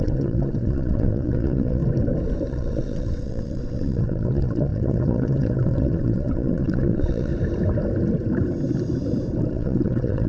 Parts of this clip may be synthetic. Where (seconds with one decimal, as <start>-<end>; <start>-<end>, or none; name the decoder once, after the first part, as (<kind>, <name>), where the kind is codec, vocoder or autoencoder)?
0.0-1.8 (vocoder, WaveNeXt); 2.5-7.3; 9.5-10.3